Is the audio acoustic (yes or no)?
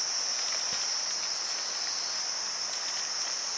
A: yes